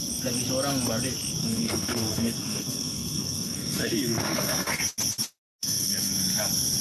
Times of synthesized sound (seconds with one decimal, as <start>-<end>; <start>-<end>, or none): 1.4-4.8; 5.6-6.1